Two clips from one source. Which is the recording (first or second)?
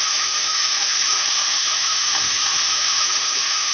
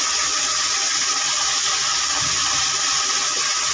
second